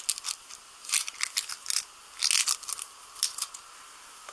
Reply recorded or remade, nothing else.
recorded